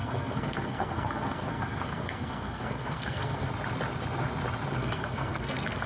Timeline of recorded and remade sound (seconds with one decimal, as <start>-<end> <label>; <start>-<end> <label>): 0.0-3.5 remade; 3.5-4.8 recorded; 4.8-5.9 remade